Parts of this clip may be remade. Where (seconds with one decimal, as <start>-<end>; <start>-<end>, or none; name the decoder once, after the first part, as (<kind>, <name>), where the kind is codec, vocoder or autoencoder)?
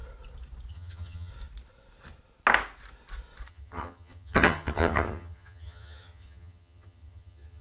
0.7-1.3 (vocoder, HiFi-GAN); 3.5-7.6